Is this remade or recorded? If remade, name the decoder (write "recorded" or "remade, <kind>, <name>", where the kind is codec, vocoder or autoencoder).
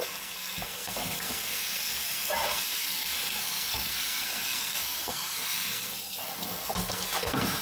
remade, codec, SNAC